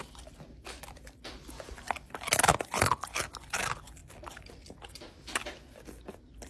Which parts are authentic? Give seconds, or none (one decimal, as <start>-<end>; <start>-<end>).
0.0-6.5